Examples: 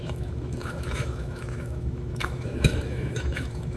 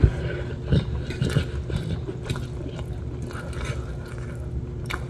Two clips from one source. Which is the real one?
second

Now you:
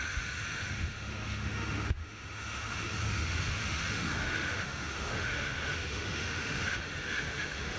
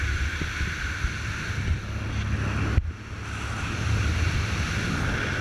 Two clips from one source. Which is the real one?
second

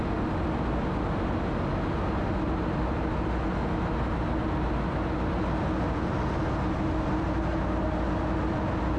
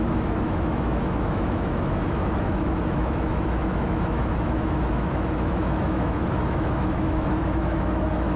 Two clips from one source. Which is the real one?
first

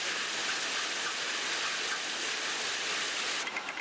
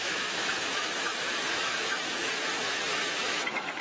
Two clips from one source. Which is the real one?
first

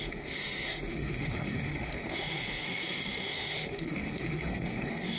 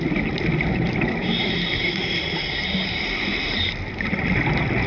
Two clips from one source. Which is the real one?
second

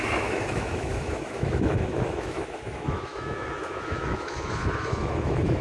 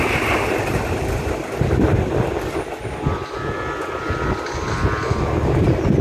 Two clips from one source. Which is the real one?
second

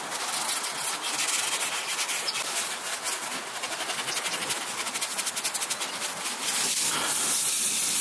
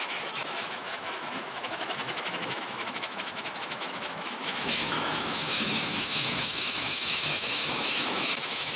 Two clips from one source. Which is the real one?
first